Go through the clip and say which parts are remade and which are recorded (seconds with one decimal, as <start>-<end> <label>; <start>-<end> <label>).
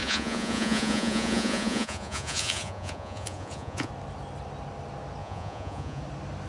0.0-3.9 remade; 3.9-5.2 recorded; 5.2-6.0 remade; 6.0-6.5 recorded